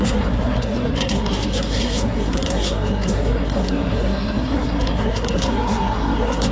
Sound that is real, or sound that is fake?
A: fake